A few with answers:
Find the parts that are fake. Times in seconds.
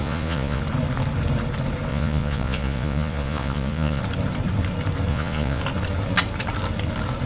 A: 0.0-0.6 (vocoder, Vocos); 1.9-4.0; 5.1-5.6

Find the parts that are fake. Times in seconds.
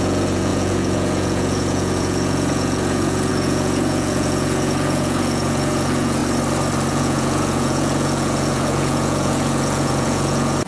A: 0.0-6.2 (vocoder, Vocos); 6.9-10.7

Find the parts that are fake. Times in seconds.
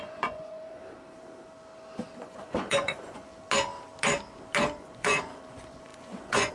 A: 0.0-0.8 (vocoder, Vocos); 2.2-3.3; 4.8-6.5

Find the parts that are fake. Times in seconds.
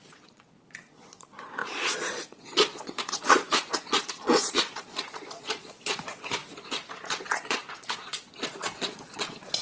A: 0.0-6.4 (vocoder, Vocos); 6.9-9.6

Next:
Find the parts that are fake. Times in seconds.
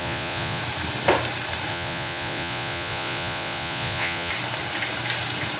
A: 0.0-0.6 (vocoder, Vocos); 1.7-4.3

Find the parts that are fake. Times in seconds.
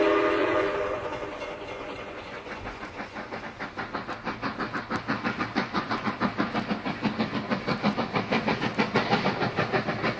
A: 0.4-3.4 (vocoder, Vocos); 5.6-6.2